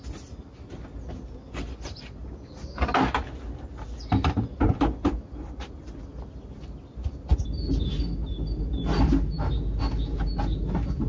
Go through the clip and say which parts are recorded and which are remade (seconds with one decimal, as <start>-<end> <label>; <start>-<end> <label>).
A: 0.0-11.1 recorded